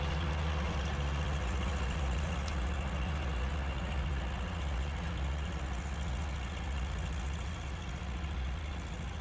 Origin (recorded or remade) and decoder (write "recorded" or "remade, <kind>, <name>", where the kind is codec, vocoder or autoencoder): remade, vocoder, Vocos